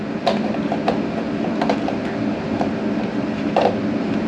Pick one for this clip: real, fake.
real